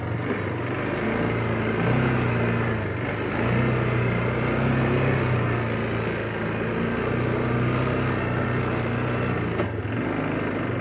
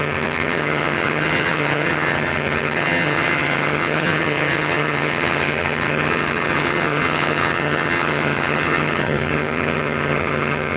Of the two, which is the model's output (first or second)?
second